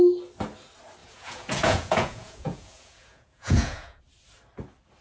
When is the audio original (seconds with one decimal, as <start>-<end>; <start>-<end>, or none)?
0.0-1.0; 4.0-5.0